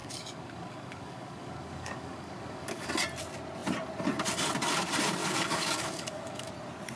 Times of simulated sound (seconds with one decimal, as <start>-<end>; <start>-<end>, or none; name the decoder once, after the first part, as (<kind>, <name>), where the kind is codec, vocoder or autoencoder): 0.0-2.9 (codec, DAC); 5.2-6.5